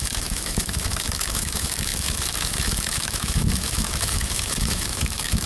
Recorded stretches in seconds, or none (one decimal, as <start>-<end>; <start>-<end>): none